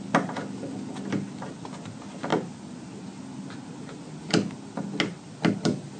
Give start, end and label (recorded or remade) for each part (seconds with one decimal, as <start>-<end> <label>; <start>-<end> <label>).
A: 0.0-6.0 recorded